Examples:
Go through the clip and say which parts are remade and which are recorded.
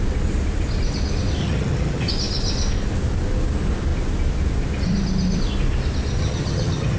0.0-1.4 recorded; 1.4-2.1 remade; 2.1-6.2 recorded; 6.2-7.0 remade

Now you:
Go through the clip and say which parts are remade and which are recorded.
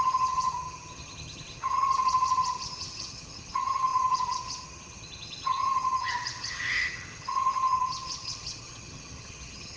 0.0-9.8 remade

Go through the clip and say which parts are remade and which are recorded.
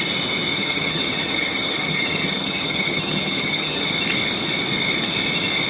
0.0-0.5 recorded; 0.5-3.9 remade; 3.9-5.7 recorded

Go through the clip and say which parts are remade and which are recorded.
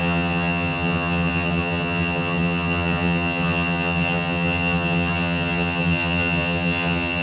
0.0-7.2 remade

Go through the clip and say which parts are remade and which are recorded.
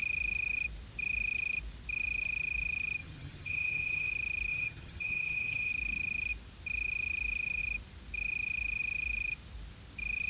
0.0-3.0 recorded; 3.0-4.1 remade; 4.1-4.5 recorded; 4.5-5.7 remade; 5.7-10.3 recorded